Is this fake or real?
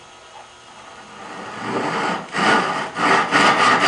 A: real